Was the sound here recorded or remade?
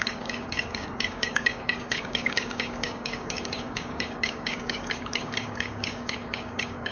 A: remade